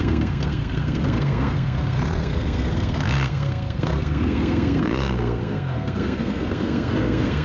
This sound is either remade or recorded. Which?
remade